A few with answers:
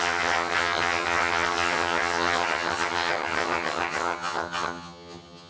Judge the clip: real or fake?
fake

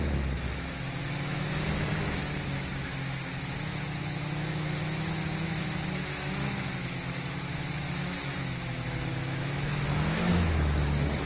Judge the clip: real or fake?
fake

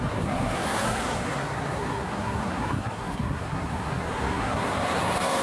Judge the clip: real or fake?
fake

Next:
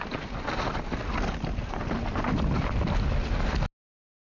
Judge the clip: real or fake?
real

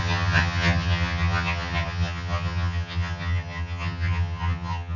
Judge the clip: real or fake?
fake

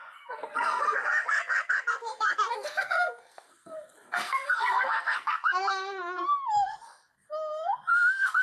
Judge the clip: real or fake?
fake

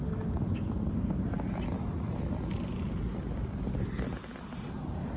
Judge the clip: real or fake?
real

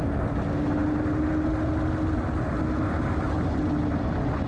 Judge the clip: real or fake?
real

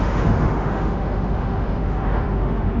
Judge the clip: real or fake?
fake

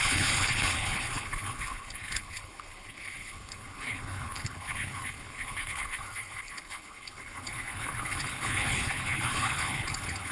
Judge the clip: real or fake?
fake